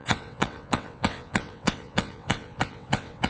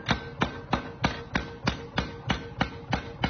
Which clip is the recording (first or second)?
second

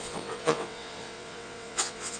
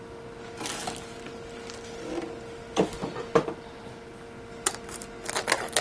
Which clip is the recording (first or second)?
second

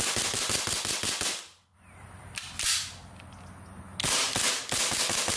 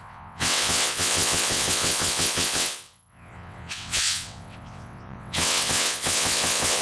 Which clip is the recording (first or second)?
first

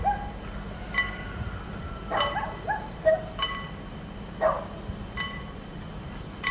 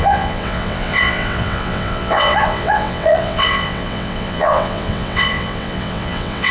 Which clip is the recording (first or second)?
first